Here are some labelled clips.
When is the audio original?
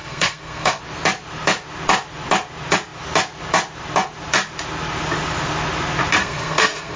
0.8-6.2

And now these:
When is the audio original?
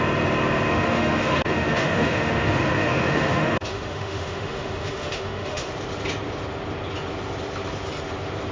0.0-0.7; 5.7-8.5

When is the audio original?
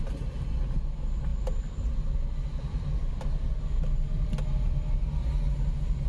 0.0-6.1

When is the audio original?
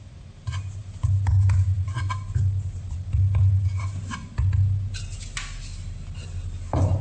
0.0-7.0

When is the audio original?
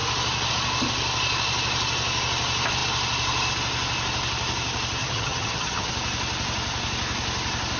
0.0-5.0; 5.9-7.8